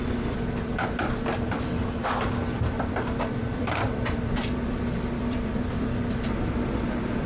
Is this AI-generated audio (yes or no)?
yes